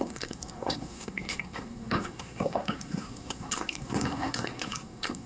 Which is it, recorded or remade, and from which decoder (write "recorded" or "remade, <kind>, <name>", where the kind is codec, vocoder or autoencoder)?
remade, codec, SNAC